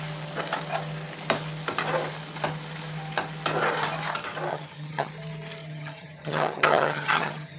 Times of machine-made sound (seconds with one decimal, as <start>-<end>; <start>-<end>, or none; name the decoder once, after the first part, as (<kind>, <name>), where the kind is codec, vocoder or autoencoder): 4.5-5.1 (vocoder, HiFi-GAN); 5.6-7.6